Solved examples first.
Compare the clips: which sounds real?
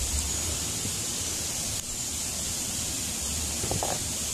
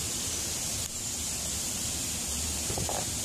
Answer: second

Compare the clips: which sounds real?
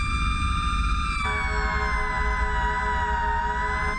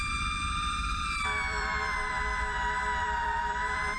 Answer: first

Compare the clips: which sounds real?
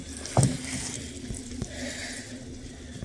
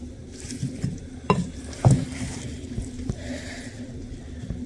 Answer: first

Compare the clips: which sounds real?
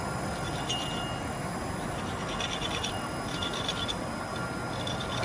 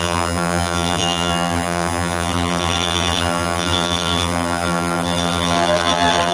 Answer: first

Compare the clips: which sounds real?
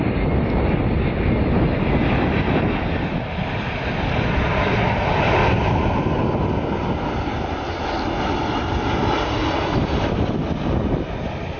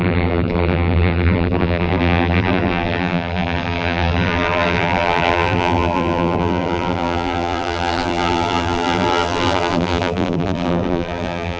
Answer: first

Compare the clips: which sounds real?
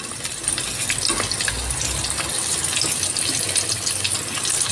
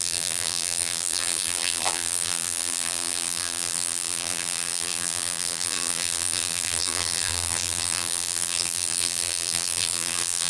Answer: first